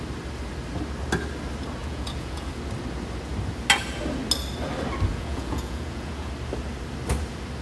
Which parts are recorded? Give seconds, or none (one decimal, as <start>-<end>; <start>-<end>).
0.0-1.8; 2.5-5.1; 6.3-7.6